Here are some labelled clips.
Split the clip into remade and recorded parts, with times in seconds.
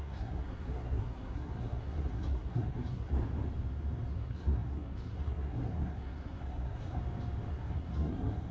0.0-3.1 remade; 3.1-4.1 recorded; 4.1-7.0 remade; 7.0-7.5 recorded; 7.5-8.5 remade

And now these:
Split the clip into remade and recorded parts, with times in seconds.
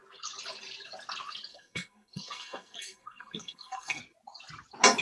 0.0-1.5 recorded; 1.5-4.0 remade; 4.0-5.0 recorded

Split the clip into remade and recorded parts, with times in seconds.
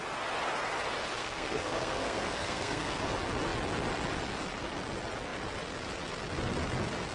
0.0-1.2 recorded; 1.2-3.0 remade; 3.0-7.1 recorded